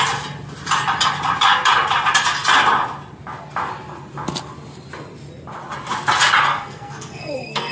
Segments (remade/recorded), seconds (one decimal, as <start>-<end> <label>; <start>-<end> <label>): 0.0-6.5 recorded; 6.5-7.7 remade